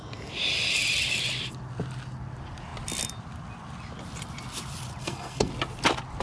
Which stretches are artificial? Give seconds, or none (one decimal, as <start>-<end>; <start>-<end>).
5.0-5.5